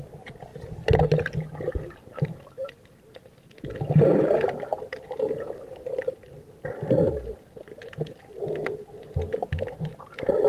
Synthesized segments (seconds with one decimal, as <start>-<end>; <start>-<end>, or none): none